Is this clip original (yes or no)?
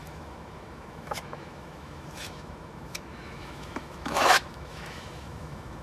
no